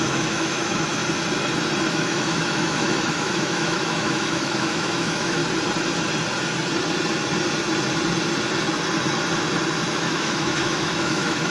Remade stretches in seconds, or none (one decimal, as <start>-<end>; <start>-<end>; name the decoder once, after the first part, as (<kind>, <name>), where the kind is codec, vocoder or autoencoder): 0.0-1.0 (autoencoder, DAC-VAE); 1.9-5.4; 9.9-11.5